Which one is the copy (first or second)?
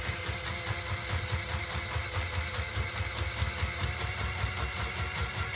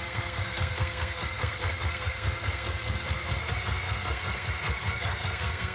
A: second